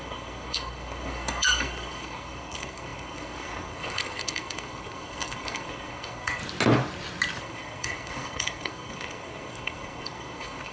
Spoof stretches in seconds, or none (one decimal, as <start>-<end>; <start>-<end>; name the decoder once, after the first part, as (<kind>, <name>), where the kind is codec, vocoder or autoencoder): 0.0-6.4 (codec, SNAC); 7.4-10.7